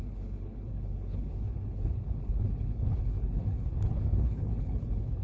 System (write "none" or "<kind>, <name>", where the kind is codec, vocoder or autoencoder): codec, HILCodec